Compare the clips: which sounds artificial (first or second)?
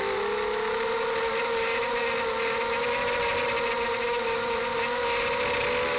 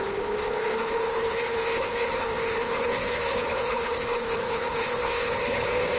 second